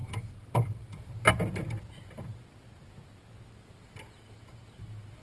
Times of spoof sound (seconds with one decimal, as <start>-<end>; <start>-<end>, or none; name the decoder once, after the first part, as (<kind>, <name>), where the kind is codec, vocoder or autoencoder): 0.0-1.1 (vocoder, BigVGAN v2)